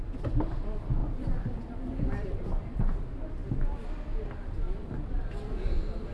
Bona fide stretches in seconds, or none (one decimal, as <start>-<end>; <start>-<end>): 0.0-1.0; 3.0-3.4; 4.2-6.1